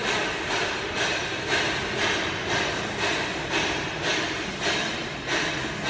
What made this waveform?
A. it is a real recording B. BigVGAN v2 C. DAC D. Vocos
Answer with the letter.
A